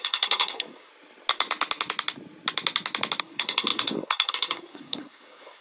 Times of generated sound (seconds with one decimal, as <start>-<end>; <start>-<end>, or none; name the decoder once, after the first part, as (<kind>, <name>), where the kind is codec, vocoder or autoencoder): 0.0-0.9 (codec, SNAC); 3.2-5.6